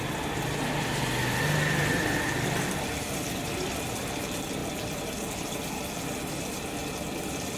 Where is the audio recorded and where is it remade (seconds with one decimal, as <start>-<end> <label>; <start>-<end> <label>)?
0.0-7.6 recorded